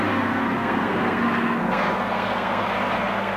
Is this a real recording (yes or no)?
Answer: no